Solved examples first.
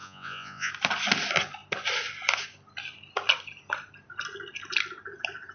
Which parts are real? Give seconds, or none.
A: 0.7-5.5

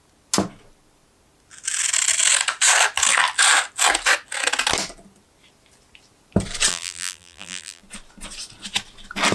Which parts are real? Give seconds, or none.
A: 0.0-6.7; 7.8-9.3

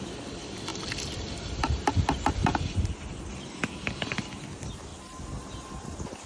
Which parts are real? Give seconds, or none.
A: 0.0-0.7; 1.9-2.4; 4.3-6.3